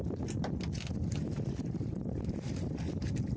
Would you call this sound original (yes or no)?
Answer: yes